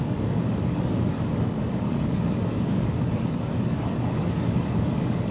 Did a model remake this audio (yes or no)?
yes